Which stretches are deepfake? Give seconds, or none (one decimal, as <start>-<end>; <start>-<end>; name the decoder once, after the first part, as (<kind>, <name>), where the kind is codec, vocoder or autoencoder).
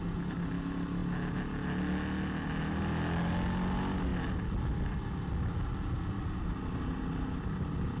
none